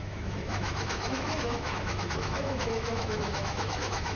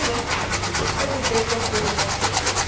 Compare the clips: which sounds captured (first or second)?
second